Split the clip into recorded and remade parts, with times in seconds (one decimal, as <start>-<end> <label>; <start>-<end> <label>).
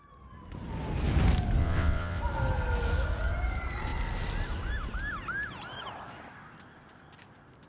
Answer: 0.0-1.6 recorded; 1.6-2.2 remade; 2.2-7.7 recorded